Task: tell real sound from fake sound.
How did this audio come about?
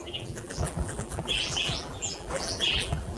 fake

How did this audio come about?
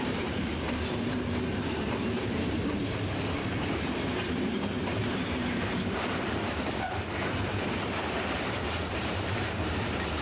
fake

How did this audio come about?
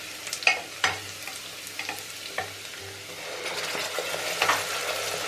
real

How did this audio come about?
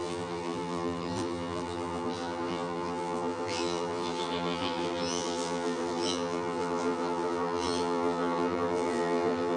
fake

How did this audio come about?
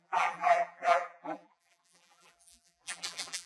fake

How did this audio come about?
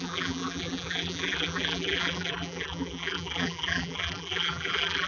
fake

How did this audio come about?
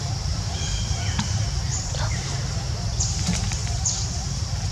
fake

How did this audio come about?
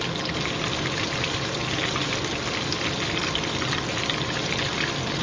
real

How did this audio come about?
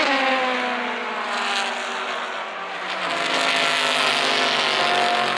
real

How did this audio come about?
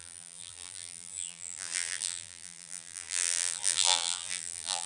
fake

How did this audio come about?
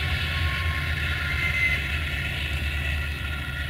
real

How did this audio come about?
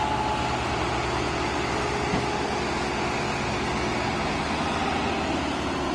real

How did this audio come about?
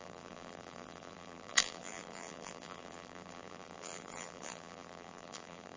fake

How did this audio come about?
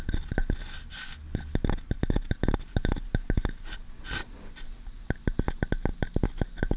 real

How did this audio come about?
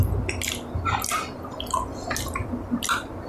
real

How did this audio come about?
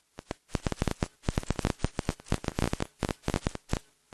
real